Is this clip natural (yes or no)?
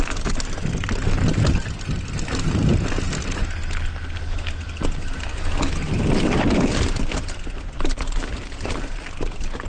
yes